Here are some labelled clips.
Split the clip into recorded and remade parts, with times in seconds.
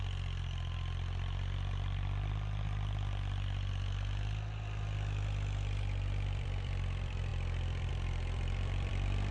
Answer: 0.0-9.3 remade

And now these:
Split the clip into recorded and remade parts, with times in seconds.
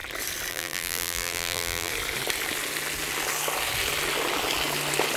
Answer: 0.0-0.5 recorded; 0.5-1.9 remade; 1.9-5.2 recorded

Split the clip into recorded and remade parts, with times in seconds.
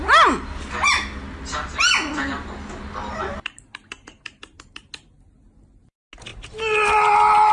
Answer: 0.0-7.5 recorded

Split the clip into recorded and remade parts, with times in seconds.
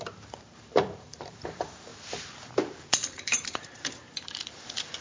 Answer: 0.0-1.9 remade; 1.9-2.4 recorded; 2.4-5.0 remade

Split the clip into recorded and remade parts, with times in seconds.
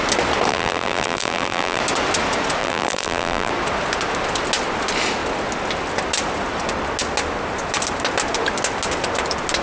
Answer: 0.0-0.5 recorded; 0.5-1.8 remade; 1.8-2.6 recorded; 2.6-3.5 remade; 3.5-9.6 recorded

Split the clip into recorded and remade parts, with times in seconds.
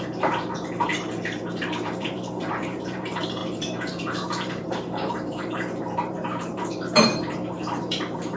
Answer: 0.0-0.9 remade; 0.9-1.8 recorded; 1.8-8.4 remade